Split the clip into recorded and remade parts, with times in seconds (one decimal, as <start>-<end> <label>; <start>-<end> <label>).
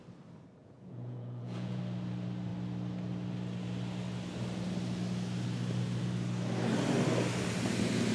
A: 0.0-0.6 recorded; 0.6-1.8 remade; 1.8-8.1 recorded